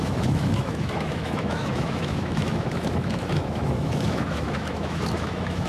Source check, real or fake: fake